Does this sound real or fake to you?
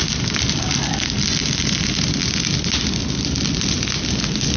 real